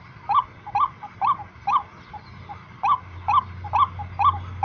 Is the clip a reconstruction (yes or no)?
no